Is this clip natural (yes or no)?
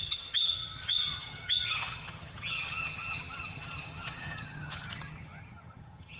no